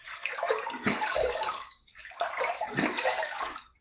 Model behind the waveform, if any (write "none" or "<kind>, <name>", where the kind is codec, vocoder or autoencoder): codec, DAC